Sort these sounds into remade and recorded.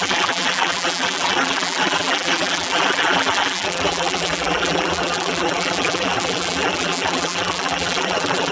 remade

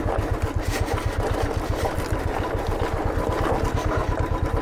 recorded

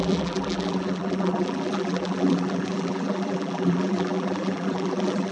remade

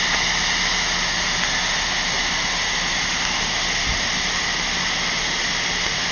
recorded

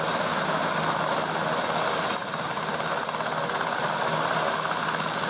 recorded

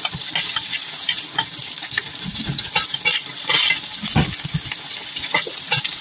recorded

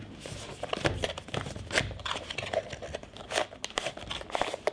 recorded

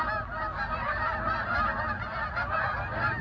recorded